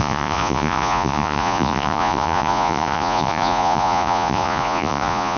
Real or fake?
fake